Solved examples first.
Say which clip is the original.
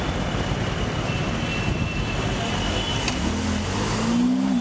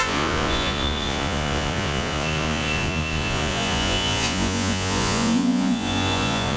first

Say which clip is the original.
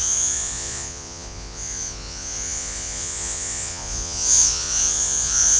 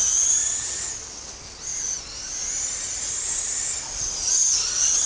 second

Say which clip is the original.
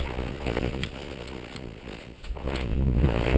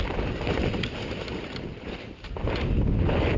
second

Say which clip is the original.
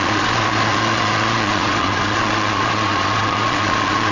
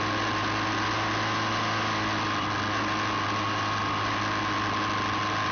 second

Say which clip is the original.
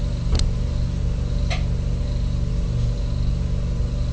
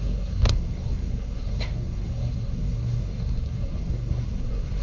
first